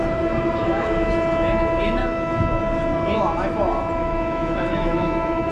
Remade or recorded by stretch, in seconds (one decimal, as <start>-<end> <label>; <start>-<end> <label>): 0.0-0.6 recorded; 0.6-1.1 remade; 1.1-2.0 recorded; 2.0-2.6 remade; 2.6-4.0 recorded; 4.0-5.5 remade